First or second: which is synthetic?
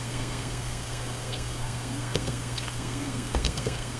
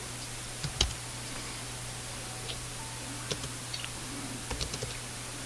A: first